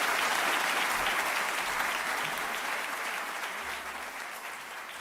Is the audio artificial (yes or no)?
yes